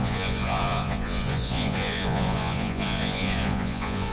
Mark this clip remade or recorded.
remade